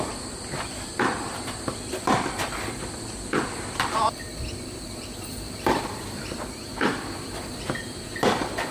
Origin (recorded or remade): remade